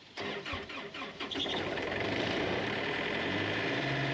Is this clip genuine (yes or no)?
no